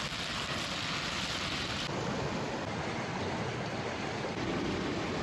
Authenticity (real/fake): real